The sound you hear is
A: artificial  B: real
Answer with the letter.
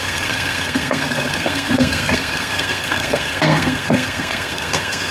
A